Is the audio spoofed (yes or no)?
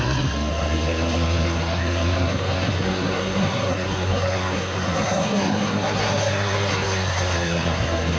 yes